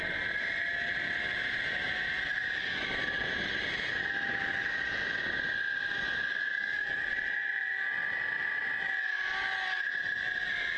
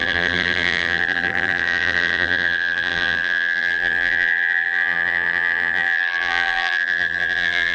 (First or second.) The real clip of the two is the first